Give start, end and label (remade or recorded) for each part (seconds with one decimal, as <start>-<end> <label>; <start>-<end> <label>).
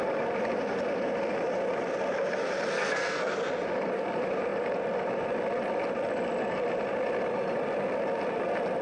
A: 0.0-2.7 recorded; 2.7-3.3 remade; 3.3-8.8 recorded